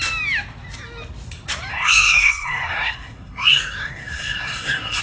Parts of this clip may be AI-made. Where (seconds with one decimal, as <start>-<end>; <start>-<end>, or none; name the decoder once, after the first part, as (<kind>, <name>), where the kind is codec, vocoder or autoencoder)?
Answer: 1.7-5.0 (codec, SNAC)